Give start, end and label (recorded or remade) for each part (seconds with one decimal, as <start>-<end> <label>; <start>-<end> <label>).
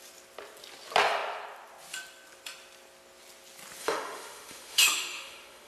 0.0-3.8 recorded; 3.8-5.7 remade